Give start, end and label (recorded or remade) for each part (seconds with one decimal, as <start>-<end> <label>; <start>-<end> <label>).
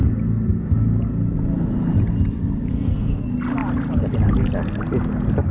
0.0-2.7 recorded; 2.7-3.2 remade; 3.2-5.5 recorded